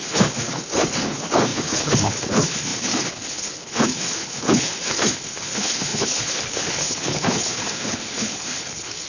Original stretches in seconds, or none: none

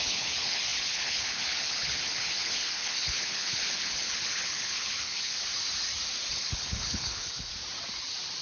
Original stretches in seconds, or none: 5.5-6.3; 7.5-8.4

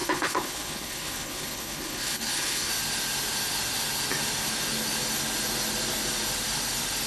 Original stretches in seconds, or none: 2.7-7.1

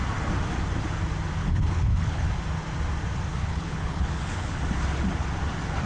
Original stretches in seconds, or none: 0.0-1.4; 2.3-3.3; 4.6-5.9

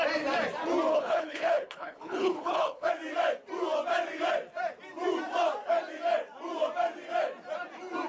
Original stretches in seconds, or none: 0.0-0.9; 2.9-8.1

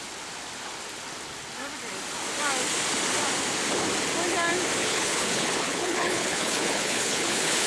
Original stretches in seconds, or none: 0.0-4.8

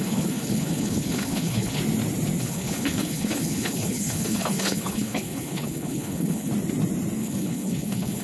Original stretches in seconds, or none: 1.8-2.4; 6.5-7.2

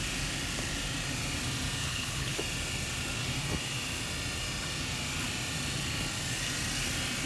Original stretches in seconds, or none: 0.0-1.8; 2.4-7.2